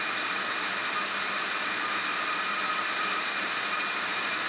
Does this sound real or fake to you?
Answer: real